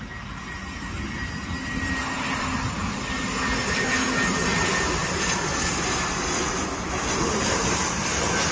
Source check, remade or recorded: recorded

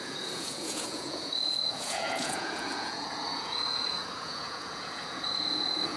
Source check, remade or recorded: remade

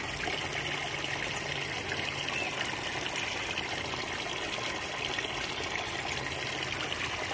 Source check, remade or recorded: recorded